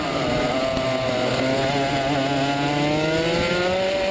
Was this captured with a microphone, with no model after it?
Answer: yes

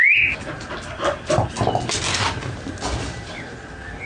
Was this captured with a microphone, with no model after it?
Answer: yes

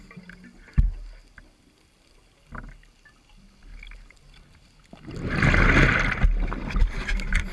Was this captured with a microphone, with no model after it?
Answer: yes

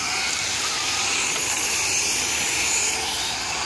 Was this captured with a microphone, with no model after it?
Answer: yes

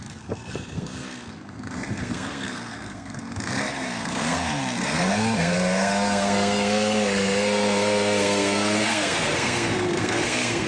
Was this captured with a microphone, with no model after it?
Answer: no